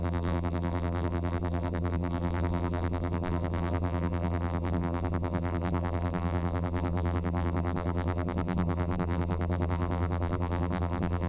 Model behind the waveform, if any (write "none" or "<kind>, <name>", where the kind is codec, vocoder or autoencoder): vocoder, BigVGAN v2